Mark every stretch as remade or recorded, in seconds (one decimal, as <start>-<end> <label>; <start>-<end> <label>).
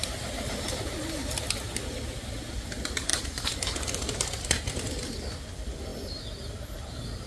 0.0-3.1 recorded; 3.1-3.6 remade; 3.6-7.3 recorded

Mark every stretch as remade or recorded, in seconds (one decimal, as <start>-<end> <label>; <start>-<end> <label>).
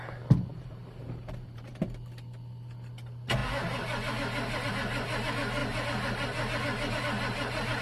0.0-0.5 recorded; 0.5-1.7 remade; 1.7-7.8 recorded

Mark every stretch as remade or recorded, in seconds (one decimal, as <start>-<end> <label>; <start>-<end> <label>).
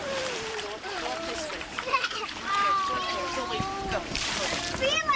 0.0-5.2 remade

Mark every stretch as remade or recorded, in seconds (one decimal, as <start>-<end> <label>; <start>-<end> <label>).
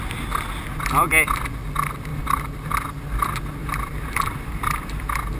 0.0-2.1 recorded; 2.1-2.7 remade; 2.7-3.6 recorded; 3.6-5.0 remade; 5.0-5.4 recorded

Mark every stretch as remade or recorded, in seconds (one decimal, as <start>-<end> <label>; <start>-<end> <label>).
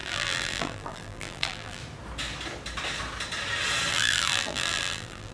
0.0-1.8 remade; 1.8-3.9 recorded; 3.9-5.3 remade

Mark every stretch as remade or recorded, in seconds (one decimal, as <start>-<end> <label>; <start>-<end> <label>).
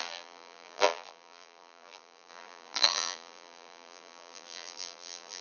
0.0-5.4 remade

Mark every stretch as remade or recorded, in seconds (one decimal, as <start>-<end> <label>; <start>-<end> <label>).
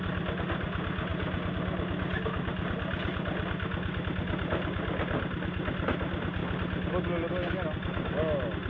0.0-8.7 recorded